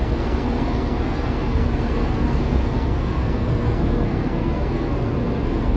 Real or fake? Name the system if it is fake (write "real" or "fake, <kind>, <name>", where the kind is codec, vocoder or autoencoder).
fake, codec, SNAC